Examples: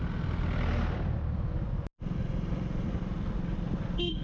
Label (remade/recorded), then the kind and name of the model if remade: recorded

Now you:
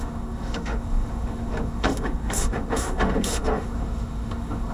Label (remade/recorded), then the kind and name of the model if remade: remade, autoencoder, DAC-VAE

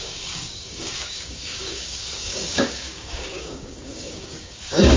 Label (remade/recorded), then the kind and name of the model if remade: remade, codec, DAC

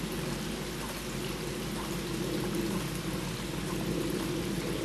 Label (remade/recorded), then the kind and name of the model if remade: recorded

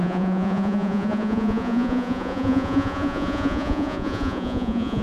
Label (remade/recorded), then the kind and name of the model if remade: remade, vocoder, Vocos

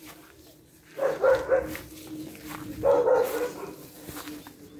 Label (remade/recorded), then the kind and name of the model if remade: recorded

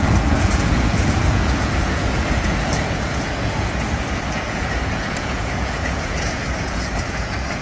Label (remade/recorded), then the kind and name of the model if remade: remade, vocoder, Vocos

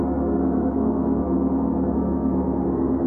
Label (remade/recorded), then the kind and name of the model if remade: remade, codec, SNAC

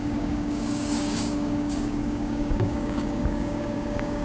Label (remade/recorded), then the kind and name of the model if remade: remade, codec, DAC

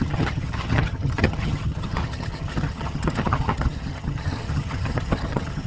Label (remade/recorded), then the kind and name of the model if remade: remade, vocoder, HiFi-GAN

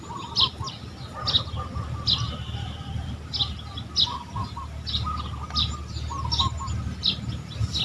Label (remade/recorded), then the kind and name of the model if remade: recorded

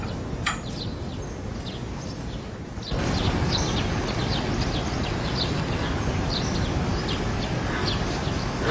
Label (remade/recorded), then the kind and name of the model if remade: recorded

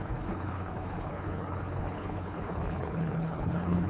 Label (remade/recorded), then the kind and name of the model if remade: remade, codec, HILCodec